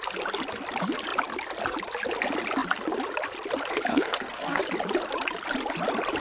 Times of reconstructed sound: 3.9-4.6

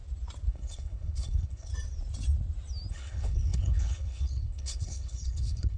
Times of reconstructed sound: 0.5-1.7; 2.9-5.8